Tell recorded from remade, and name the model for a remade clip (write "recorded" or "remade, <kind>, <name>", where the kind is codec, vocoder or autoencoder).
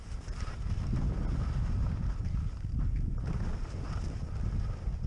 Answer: recorded